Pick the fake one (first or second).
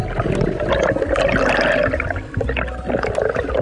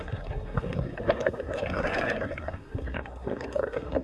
second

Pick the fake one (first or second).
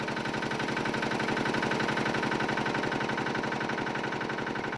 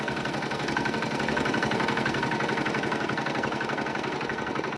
second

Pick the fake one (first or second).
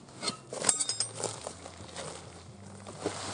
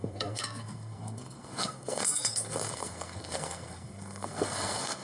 second